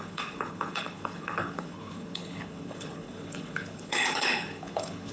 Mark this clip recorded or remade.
remade